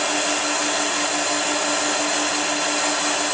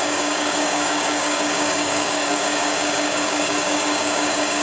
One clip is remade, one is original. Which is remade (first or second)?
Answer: second